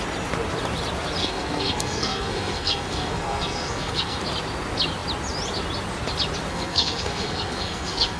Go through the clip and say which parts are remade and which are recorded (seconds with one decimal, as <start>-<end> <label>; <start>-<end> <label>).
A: 0.0-1.2 recorded; 1.2-4.2 remade; 4.2-6.5 recorded; 6.5-8.2 remade